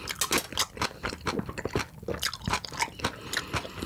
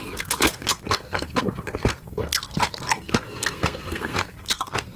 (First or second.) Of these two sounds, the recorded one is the first